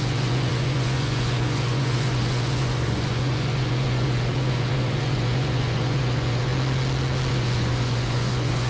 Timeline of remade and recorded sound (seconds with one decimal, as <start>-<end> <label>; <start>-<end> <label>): 0.0-6.5 remade; 6.5-7.3 recorded; 7.3-8.7 remade